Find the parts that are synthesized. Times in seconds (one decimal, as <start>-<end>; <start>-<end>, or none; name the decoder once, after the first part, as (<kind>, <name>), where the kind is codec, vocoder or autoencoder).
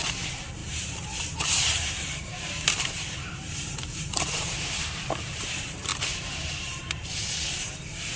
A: 0.6-5.5 (vocoder, BigVGAN v2); 5.9-7.3